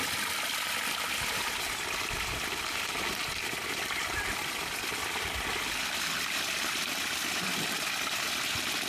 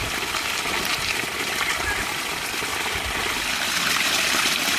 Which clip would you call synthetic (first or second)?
first